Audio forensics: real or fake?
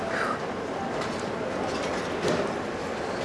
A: real